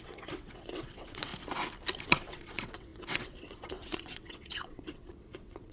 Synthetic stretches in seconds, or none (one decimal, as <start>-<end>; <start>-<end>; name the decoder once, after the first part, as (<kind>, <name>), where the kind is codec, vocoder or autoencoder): 0.0-1.3 (vocoder, WaveNeXt); 2.0-5.7